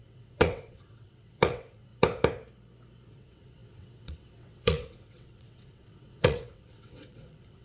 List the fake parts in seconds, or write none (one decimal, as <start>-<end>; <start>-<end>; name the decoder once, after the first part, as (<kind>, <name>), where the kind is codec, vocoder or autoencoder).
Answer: 0.0-1.9 (vocoder, WaveNeXt); 3.1-7.6